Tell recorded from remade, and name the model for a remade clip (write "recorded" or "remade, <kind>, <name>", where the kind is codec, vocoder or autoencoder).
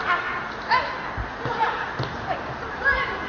recorded